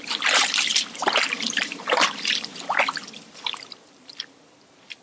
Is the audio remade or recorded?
remade